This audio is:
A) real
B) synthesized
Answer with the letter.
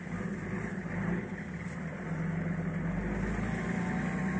A